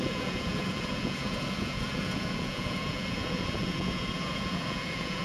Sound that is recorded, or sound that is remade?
remade